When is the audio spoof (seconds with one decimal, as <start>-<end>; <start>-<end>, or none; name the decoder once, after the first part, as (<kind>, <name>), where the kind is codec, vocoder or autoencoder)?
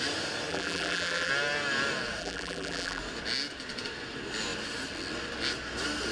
0.5-1.3 (vocoder, BigVGAN v2); 2.2-3.0